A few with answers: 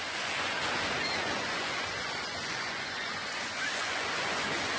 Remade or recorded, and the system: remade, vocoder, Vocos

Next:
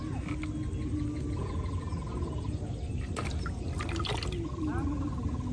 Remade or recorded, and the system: recorded